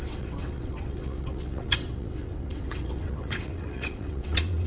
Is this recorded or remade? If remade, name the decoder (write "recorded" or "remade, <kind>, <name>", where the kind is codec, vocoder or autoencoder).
remade, vocoder, WaveNeXt